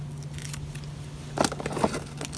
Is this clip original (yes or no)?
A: yes